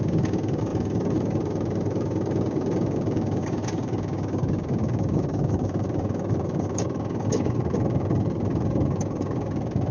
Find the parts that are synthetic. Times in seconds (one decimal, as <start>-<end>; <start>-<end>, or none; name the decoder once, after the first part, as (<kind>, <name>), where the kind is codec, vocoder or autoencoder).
0.0-9.9 (codec, DAC)